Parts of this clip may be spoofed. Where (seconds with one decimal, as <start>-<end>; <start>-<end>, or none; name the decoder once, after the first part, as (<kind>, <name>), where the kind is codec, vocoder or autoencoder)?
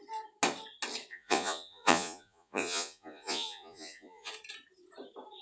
1.1-4.3 (vocoder, Vocos)